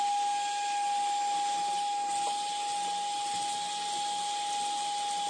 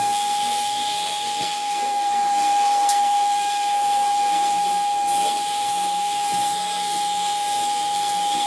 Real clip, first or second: first